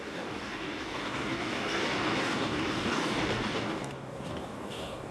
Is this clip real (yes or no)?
no